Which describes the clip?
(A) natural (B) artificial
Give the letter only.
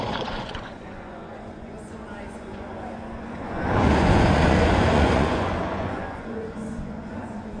B